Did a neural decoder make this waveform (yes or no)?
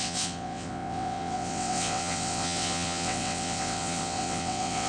yes